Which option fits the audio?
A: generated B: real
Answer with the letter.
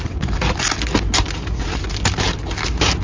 B